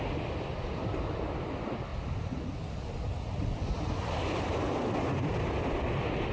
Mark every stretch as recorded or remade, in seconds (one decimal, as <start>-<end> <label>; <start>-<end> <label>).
0.0-6.3 recorded